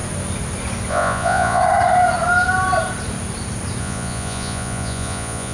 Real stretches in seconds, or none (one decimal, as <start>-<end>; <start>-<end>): 0.0-0.9; 1.6-3.8